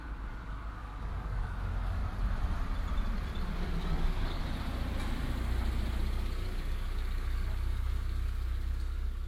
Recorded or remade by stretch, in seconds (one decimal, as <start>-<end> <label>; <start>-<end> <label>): 0.0-2.0 remade; 2.0-3.5 recorded; 3.5-4.4 remade; 4.4-6.1 recorded; 6.1-9.3 remade